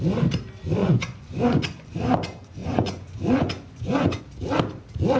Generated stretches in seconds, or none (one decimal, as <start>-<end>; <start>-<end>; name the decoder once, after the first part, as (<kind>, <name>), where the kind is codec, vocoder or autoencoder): 0.8-1.9 (vocoder, Vocos); 2.6-4.2